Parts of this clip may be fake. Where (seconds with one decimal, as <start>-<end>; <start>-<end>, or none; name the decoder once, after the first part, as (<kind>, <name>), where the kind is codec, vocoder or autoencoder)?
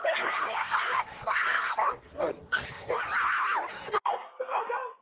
0.0-3.0 (codec, SNAC); 3.7-4.6